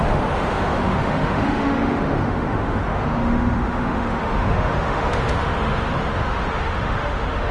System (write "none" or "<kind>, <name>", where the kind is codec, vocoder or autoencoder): autoencoder, DAC-VAE